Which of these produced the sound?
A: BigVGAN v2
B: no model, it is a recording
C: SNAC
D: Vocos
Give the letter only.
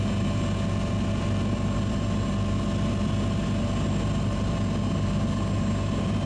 B